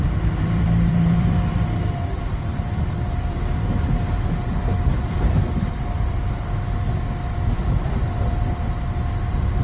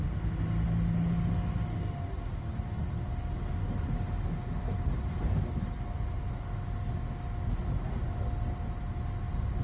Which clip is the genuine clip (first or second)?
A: second